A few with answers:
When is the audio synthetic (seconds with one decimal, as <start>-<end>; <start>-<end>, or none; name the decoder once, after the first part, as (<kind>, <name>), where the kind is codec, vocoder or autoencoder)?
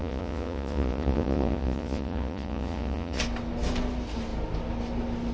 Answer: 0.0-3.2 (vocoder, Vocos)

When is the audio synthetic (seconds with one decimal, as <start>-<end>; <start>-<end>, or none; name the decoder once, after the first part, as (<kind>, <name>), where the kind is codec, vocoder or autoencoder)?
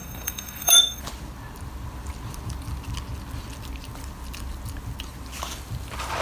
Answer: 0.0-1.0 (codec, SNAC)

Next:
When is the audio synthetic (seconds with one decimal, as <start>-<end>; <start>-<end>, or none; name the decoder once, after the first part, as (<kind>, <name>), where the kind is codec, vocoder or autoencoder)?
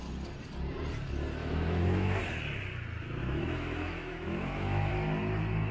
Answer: 1.4-2.2 (autoencoder, DAC-VAE); 3.2-4.9